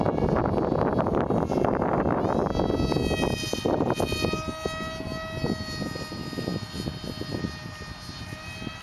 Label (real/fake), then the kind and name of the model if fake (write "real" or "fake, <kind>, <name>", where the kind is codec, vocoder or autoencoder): real